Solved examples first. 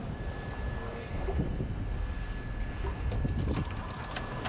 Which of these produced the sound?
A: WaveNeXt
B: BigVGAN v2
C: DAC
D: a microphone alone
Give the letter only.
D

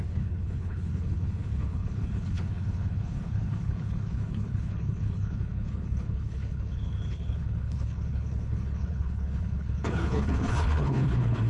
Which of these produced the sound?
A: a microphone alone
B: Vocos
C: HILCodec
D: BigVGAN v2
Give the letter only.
C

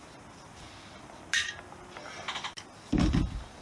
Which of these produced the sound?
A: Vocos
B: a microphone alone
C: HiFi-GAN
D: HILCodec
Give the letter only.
B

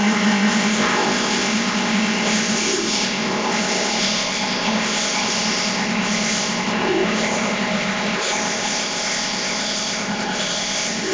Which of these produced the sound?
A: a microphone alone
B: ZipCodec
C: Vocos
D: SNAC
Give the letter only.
B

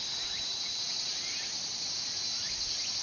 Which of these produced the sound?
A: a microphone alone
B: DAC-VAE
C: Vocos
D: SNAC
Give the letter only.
A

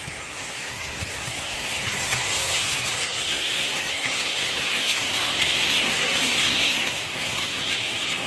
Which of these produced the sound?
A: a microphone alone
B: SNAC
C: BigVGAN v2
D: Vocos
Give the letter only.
B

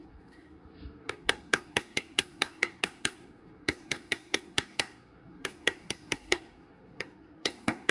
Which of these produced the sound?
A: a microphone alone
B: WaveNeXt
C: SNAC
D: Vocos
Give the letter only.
C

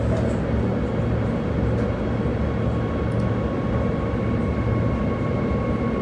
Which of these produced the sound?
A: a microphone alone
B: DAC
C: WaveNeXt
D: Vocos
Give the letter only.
A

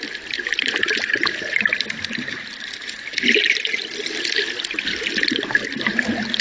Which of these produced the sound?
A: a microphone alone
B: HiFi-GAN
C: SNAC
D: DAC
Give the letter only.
A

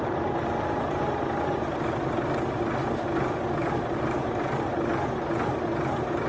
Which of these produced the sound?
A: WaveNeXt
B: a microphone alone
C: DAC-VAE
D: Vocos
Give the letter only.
B